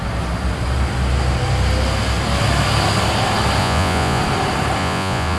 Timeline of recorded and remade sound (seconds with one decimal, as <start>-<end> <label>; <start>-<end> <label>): 0.0-3.6 recorded; 3.6-4.2 remade; 4.2-4.8 recorded; 4.8-5.4 remade